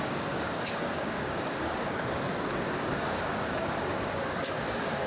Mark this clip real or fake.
fake